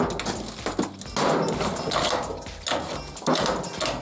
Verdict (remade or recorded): recorded